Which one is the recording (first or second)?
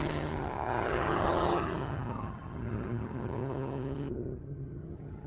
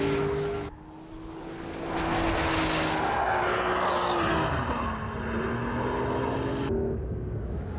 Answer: second